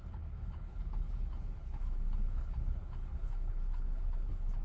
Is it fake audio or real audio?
fake